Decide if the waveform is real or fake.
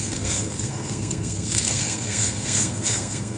fake